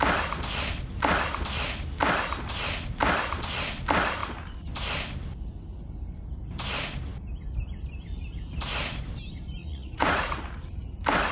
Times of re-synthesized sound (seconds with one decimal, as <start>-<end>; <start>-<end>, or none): 9.6-10.4